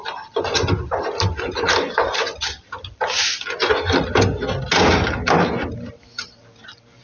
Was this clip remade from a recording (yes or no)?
no